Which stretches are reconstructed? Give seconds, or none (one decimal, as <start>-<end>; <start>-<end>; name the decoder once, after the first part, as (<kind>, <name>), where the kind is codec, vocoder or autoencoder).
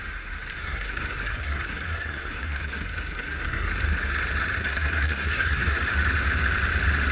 0.6-3.7 (codec, SNAC); 4.6-5.8